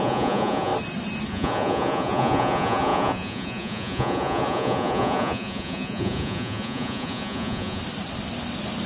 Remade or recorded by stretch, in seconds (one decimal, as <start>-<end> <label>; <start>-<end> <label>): 0.0-0.7 remade; 0.7-1.3 recorded; 1.3-7.8 remade; 7.8-8.9 recorded

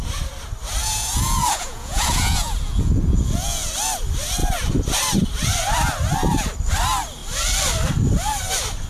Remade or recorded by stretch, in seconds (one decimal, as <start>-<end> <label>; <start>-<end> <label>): 0.0-0.8 recorded; 0.8-3.7 remade; 3.7-8.9 recorded